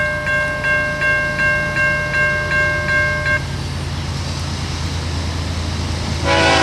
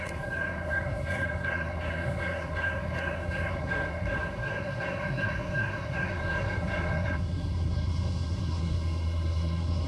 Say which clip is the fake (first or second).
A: second